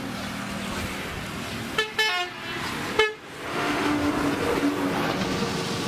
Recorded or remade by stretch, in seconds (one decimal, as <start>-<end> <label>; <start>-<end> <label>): 0.0-3.5 recorded; 3.5-4.1 remade; 4.1-5.9 recorded